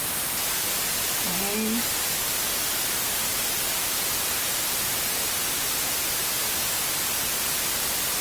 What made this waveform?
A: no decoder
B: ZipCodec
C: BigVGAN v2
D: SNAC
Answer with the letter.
A